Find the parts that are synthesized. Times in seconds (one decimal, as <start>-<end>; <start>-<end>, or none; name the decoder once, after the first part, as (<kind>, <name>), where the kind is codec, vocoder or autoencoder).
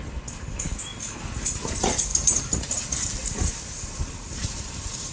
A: 2.1-2.8 (vocoder, BigVGAN v2); 3.2-5.1